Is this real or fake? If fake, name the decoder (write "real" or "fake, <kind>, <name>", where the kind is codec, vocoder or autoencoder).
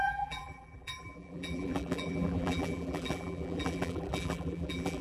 fake, vocoder, BigVGAN v2